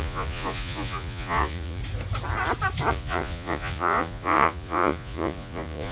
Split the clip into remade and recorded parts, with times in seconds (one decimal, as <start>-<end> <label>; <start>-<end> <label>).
0.0-1.8 remade; 1.8-2.9 recorded; 2.9-5.9 remade